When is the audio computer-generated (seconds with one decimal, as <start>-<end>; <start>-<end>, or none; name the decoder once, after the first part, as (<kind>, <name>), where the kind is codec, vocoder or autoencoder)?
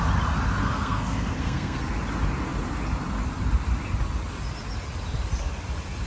0.6-1.8 (codec, SNAC)